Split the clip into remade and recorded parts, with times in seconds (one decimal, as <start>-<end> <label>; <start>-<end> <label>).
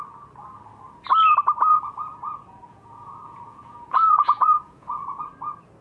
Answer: 0.0-1.7 recorded; 1.7-5.2 remade; 5.2-5.8 recorded